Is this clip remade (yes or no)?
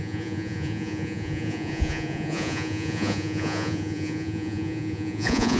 yes